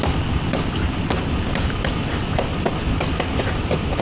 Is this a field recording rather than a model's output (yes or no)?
yes